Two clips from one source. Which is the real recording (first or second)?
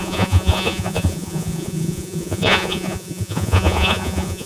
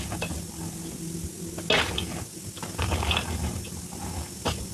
second